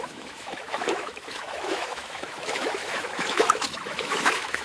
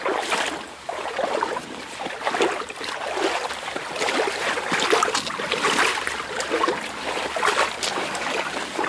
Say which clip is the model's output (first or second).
first